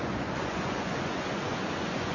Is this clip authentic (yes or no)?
no